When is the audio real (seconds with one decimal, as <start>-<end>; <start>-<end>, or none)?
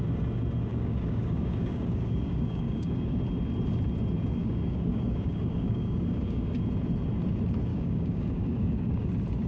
0.0-0.7; 3.2-4.4; 6.5-7.7; 9.1-9.5